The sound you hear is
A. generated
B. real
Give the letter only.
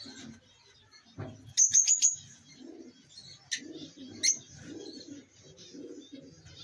B